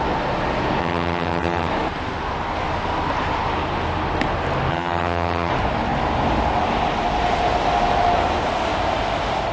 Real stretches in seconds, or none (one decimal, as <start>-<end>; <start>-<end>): 0.0-0.8; 1.7-4.7; 5.5-9.5